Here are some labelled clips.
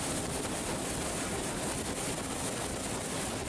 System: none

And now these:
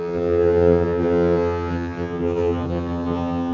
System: vocoder, HiFi-GAN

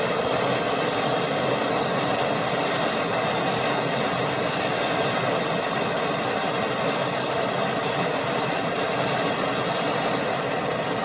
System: none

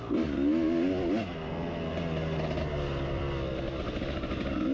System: none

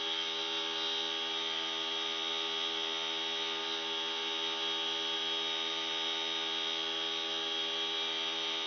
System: none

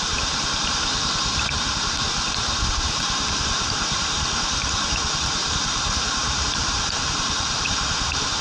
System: vocoder, BigVGAN v2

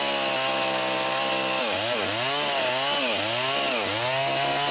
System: none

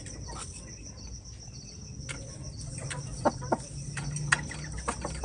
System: none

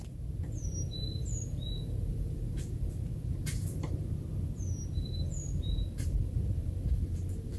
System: vocoder, BigVGAN v2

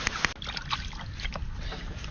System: none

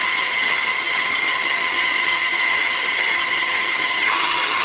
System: vocoder, HiFi-GAN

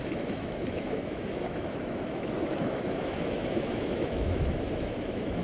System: autoencoder, DAC-VAE